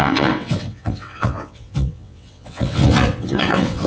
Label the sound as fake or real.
fake